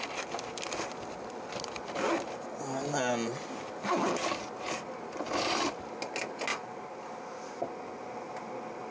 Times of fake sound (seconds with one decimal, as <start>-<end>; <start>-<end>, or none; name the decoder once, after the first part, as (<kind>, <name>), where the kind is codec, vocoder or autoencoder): none